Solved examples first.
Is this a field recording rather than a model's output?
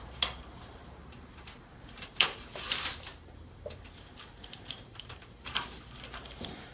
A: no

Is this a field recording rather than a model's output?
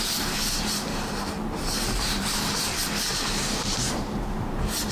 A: no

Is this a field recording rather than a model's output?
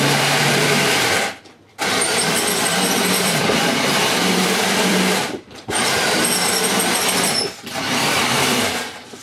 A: no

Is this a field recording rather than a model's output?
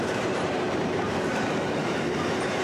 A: no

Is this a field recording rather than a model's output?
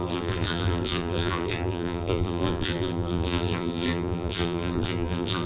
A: no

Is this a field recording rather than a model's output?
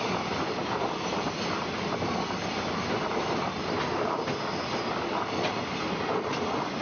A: yes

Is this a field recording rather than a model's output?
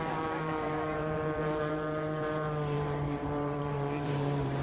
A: no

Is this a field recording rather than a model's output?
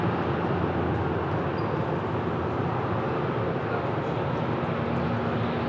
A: yes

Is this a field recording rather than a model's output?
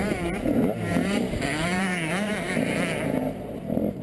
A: no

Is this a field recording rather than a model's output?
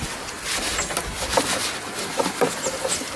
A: yes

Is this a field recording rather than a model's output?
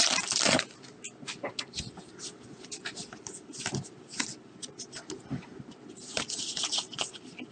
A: yes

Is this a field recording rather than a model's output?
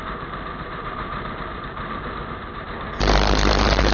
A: no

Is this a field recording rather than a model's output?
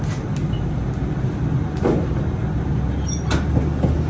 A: yes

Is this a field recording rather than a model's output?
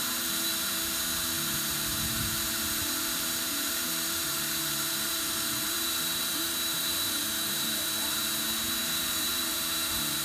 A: no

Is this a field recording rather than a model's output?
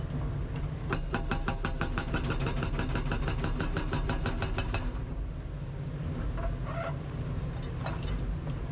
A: yes